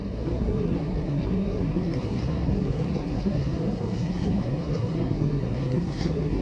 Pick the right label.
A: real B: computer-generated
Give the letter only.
B